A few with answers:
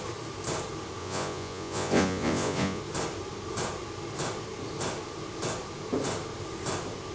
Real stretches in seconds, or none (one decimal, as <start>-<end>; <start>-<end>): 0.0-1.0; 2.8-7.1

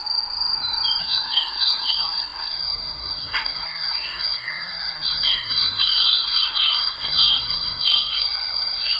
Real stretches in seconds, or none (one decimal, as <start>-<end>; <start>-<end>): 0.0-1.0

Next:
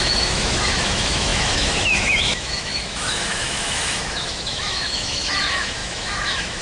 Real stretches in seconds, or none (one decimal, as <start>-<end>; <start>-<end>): none

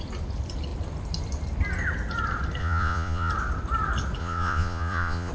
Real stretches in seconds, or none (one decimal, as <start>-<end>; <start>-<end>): 0.0-2.6; 3.3-4.2

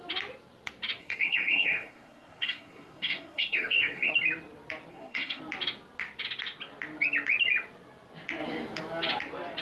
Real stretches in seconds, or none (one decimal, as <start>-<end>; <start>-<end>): 0.0-1.0; 4.1-4.9; 5.4-9.6